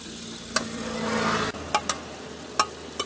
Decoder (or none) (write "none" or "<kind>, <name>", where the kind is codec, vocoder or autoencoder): none